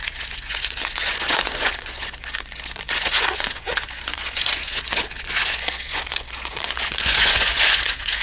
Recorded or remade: remade